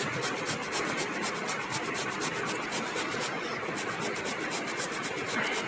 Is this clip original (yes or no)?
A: yes